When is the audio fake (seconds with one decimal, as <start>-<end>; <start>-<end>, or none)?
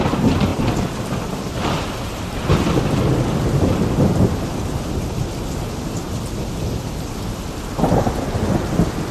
0.5-1.2